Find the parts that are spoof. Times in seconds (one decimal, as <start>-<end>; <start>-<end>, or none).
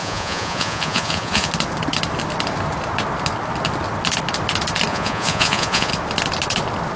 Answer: 0.0-1.5; 4.9-5.9